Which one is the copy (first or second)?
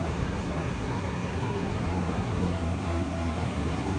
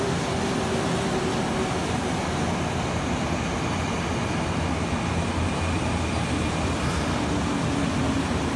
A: first